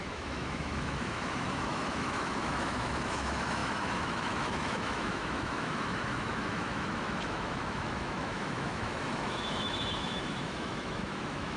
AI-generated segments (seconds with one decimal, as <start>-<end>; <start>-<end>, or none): 0.0-11.6